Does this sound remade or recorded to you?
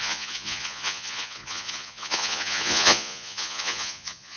remade